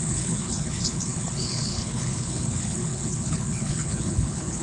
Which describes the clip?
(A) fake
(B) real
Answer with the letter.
A